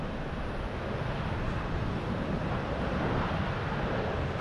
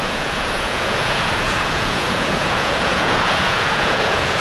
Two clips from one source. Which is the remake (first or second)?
second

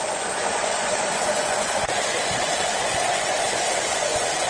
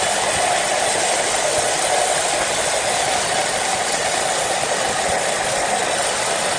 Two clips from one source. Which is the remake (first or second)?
first